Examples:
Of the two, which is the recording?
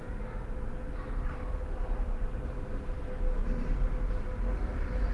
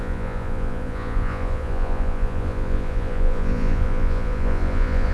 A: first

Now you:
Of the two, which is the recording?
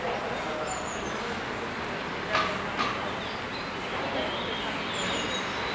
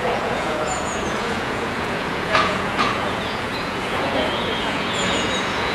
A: first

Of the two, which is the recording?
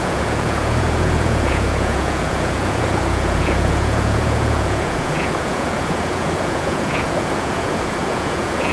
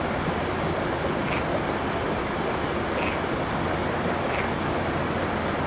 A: second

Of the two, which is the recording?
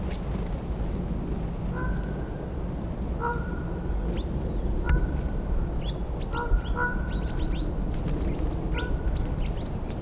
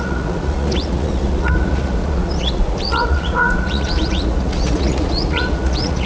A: first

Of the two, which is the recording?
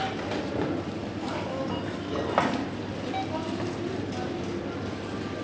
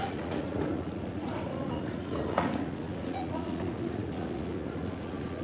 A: first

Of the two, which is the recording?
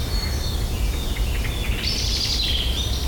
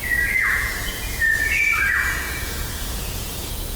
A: first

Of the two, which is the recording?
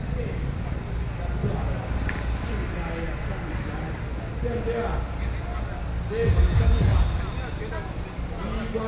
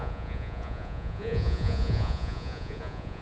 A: first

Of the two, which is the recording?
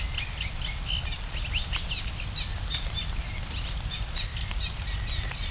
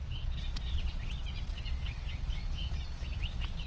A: first